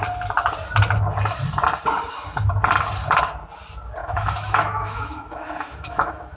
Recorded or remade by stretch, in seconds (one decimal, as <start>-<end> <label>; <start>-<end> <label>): 0.0-4.0 recorded; 4.0-6.4 remade